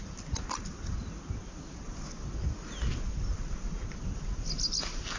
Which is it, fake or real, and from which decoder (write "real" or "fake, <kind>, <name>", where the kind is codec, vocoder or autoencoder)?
real